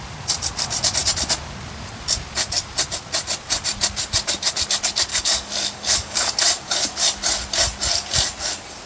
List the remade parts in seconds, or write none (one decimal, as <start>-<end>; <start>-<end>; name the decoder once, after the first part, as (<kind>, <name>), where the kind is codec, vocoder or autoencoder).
5.1-6.3 (codec, DAC)